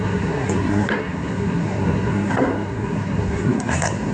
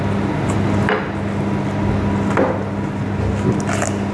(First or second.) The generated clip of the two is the first